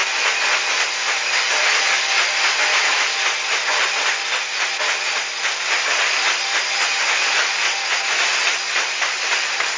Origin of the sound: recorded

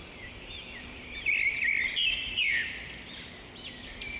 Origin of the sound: remade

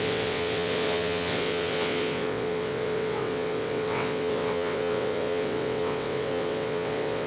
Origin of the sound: remade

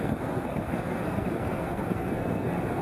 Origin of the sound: remade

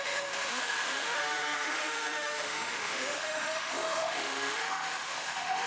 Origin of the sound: remade